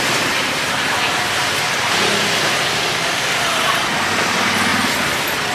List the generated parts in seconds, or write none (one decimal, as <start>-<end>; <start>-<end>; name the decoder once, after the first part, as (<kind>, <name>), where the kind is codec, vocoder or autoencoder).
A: none